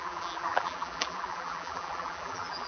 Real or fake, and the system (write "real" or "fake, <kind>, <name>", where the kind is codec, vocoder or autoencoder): fake, vocoder, BigVGAN v2